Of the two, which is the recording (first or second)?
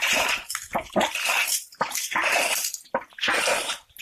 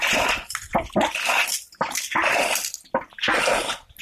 second